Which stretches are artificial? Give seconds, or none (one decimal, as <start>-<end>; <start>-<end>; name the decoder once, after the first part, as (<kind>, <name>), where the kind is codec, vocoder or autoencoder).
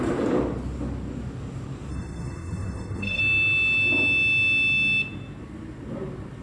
1.9-3.2 (codec, SNAC)